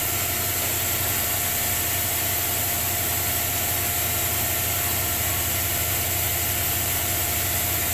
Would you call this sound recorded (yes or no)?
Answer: yes